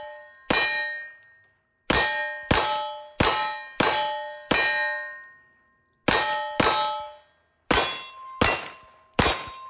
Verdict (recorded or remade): recorded